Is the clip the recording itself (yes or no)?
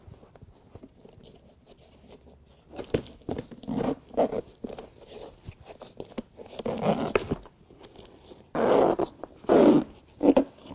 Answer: yes